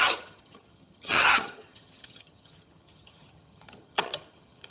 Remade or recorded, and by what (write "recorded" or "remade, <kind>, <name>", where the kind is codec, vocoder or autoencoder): remade, vocoder, HiFi-GAN